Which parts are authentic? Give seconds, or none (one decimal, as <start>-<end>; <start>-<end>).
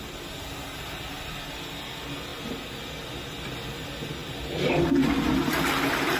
0.0-6.2